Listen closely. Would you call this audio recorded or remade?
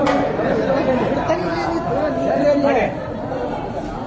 remade